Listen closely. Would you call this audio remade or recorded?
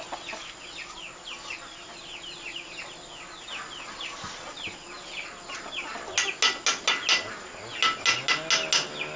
recorded